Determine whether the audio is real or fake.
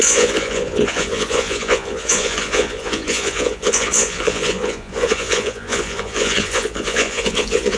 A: fake